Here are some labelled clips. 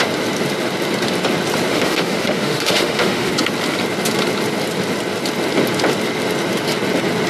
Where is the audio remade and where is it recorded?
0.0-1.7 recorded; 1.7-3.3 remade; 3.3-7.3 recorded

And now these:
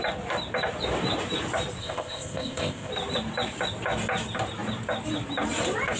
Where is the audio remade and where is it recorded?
0.0-1.8 recorded; 1.8-2.9 remade; 2.9-6.0 recorded

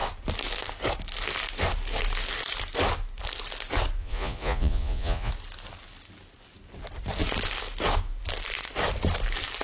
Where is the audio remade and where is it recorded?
0.0-4.0 recorded; 4.0-5.3 remade; 5.3-9.6 recorded